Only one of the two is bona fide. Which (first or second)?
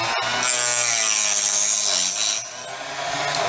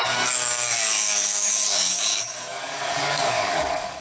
first